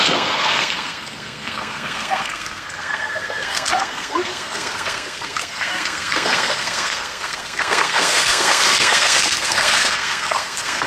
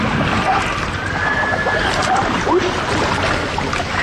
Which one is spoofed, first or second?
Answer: first